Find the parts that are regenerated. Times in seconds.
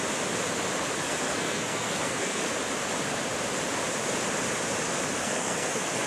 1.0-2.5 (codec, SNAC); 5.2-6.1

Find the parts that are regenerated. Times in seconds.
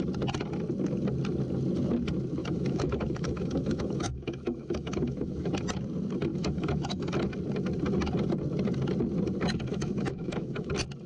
2.4-5.5 (autoencoder, DAC-VAE); 6.3-7.1; 9.7-10.7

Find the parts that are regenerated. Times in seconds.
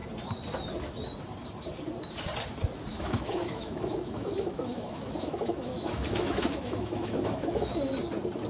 2.9-7.9 (autoencoder, DAC-VAE)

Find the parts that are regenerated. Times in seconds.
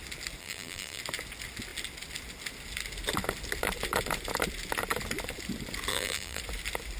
0.4-1.0 (vocoder, BigVGAN v2); 5.9-6.4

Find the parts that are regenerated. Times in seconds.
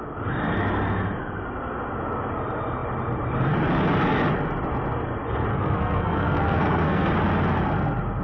5.5-7.1 (codec, SNAC)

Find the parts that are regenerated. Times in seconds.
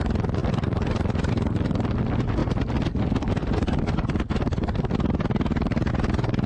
none